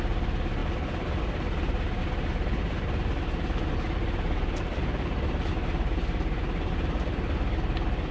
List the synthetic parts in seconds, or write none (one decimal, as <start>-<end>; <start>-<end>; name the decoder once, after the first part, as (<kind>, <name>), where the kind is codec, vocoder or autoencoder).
none